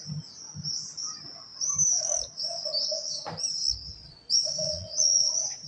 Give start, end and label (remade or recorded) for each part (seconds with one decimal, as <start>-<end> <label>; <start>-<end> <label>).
0.0-4.0 recorded; 4.0-5.7 remade

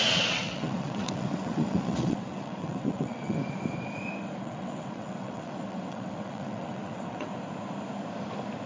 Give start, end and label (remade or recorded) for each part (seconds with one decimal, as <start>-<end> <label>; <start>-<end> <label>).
0.0-3.4 remade; 3.4-4.4 recorded; 4.4-7.3 remade; 7.3-8.7 recorded